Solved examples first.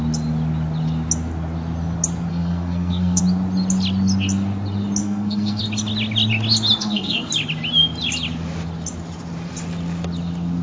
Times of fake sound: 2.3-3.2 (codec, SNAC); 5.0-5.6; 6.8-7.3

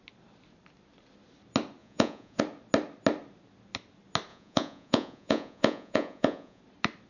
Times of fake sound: 1.8-2.4 (vocoder, Vocos); 4.3-6.6

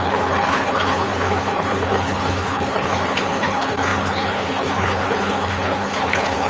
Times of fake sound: 0.0-6.5 (codec, HILCodec)